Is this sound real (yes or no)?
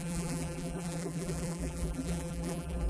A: no